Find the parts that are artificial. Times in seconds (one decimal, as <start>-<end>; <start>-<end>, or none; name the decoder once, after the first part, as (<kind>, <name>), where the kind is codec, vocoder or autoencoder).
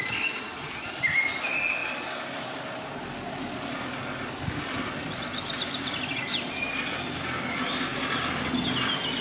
none